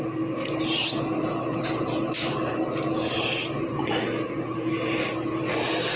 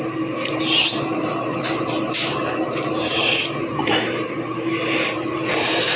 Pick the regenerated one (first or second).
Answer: second